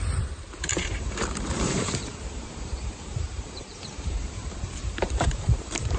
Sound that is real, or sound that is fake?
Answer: fake